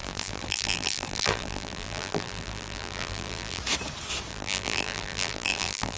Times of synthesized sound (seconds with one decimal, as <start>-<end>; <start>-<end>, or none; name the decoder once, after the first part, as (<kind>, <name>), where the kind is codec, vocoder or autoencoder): 0.0-3.6 (vocoder, BigVGAN v2); 4.3-6.0